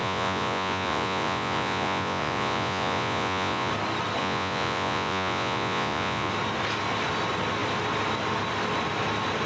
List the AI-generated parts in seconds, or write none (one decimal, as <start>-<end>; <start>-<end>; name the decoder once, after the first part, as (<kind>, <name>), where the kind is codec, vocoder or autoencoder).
0.0-3.7 (vocoder, Vocos); 4.2-6.3

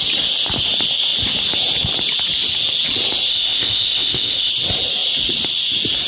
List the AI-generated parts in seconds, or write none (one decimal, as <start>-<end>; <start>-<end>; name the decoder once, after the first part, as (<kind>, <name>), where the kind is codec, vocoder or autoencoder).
3.3-4.5 (codec, ZipCodec)

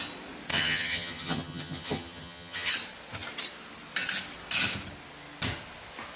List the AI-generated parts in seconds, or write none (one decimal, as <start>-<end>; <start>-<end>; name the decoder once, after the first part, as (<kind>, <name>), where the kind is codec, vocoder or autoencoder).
0.5-2.7 (vocoder, HiFi-GAN)

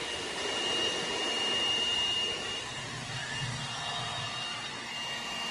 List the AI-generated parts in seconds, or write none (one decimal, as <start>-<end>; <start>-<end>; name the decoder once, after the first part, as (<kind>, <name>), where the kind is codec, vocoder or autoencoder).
0.0-3.3 (vocoder, BigVGAN v2)

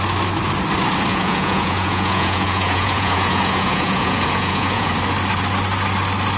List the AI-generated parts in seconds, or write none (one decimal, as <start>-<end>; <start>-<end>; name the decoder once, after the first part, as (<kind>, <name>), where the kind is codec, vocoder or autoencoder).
1.1-4.9 (vocoder, Vocos)

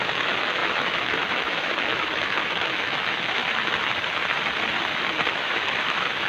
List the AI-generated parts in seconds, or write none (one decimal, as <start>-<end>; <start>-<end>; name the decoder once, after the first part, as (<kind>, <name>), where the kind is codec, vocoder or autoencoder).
0.0-3.4 (autoencoder, DAC-VAE); 5.3-6.3